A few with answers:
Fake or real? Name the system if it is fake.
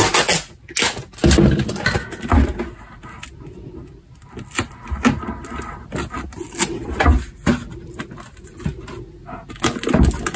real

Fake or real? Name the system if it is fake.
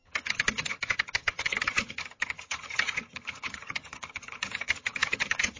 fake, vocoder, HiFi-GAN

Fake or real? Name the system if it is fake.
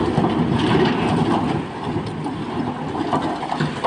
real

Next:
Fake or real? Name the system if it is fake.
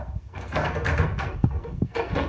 fake, codec, SNAC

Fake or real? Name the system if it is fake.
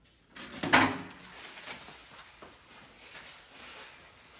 real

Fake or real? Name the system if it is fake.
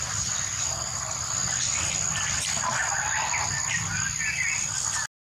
real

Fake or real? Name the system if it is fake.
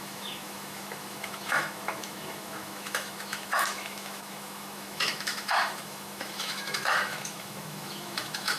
fake, autoencoder, DAC-VAE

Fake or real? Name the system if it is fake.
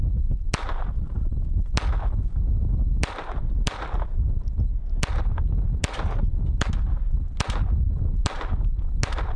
real